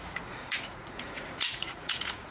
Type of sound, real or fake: fake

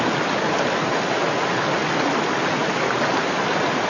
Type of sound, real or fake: real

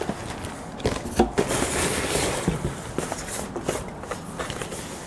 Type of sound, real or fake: real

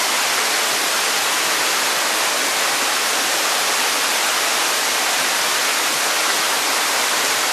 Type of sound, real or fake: real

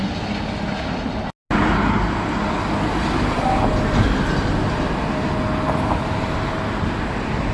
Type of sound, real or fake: real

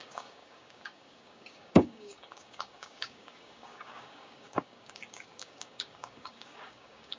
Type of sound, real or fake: fake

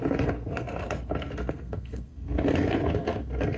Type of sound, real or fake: fake